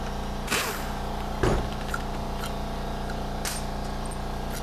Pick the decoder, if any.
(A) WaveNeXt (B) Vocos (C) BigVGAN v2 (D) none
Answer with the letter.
D